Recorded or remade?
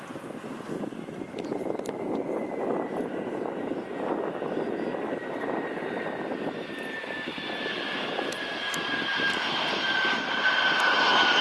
recorded